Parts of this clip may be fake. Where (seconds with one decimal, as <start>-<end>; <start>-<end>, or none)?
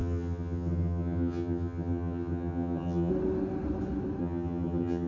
0.0-3.1; 4.2-5.1